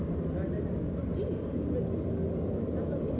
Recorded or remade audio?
recorded